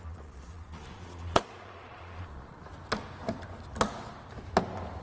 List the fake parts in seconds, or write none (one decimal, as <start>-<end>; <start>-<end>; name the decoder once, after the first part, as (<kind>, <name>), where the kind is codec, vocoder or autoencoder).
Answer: 0.0-2.7 (vocoder, Vocos)